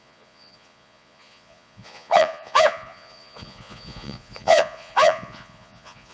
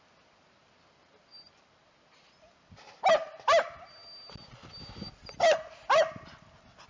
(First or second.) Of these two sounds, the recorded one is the second